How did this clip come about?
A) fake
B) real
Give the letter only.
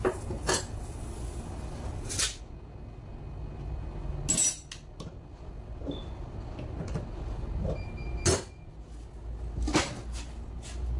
B